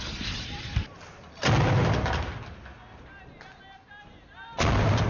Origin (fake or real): real